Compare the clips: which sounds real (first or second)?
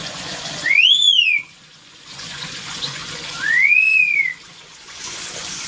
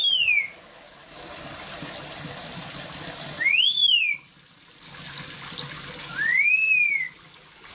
second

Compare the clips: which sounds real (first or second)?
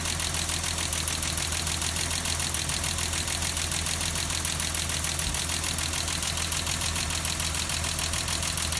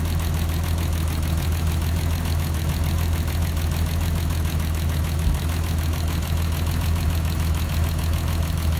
first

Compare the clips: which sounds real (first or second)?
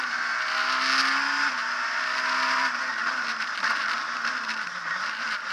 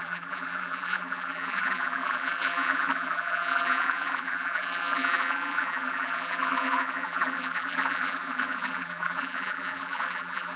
first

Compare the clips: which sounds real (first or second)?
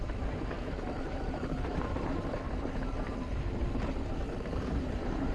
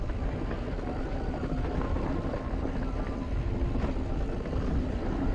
second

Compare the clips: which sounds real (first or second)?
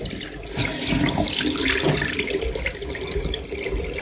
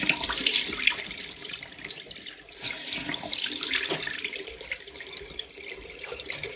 first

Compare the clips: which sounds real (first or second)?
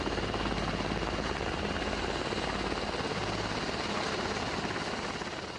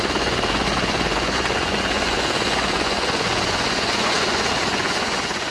first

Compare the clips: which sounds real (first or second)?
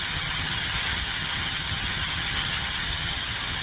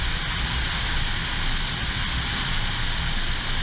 second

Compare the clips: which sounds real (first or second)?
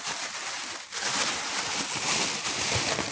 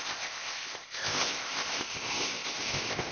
first